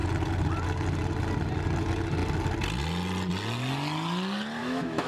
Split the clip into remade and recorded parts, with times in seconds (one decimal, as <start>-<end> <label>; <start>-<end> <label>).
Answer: 0.0-4.6 recorded; 4.6-5.1 remade